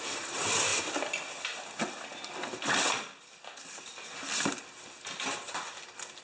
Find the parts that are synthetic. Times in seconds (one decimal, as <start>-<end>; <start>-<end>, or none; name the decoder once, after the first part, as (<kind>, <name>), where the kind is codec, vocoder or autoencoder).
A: none